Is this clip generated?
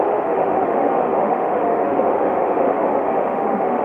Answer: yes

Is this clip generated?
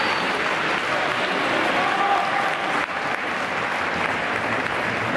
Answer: no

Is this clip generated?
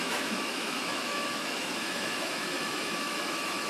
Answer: yes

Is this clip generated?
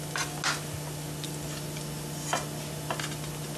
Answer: no